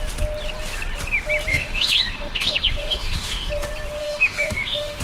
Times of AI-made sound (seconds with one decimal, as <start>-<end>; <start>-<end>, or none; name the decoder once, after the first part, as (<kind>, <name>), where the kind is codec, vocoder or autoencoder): 1.5-3.5 (autoencoder, DAC-VAE); 4.0-5.0